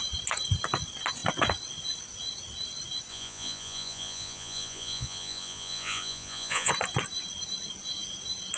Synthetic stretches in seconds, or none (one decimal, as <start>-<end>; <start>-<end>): 3.1-6.7